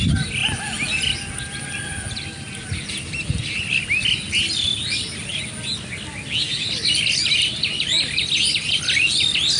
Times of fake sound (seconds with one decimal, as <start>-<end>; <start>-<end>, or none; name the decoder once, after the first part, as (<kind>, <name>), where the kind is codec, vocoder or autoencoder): none